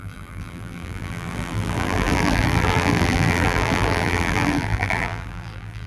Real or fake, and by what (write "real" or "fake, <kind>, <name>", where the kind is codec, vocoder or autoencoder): fake, vocoder, BigVGAN v2